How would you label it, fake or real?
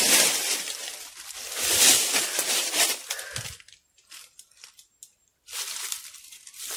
fake